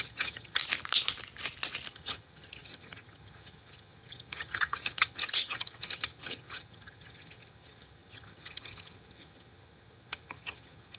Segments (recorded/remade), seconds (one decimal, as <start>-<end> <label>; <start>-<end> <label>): 0.0-0.6 remade; 0.6-1.9 recorded; 1.9-11.0 remade